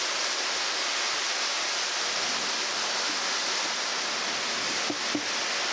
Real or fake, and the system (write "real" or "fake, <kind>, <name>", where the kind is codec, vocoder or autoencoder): real